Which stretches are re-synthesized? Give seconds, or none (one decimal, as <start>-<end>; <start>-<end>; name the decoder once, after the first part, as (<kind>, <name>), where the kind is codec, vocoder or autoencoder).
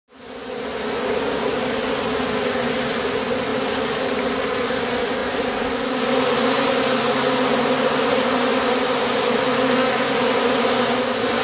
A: none